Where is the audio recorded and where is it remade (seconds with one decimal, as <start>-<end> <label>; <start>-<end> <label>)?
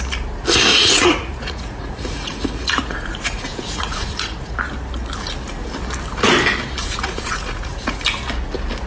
0.0-0.7 recorded; 0.7-4.6 remade; 4.6-6.8 recorded; 6.8-8.0 remade; 8.0-8.9 recorded